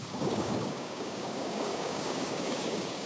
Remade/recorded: remade